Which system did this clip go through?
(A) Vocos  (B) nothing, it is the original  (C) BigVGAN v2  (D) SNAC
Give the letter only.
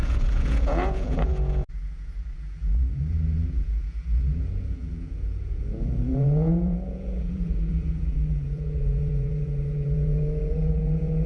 A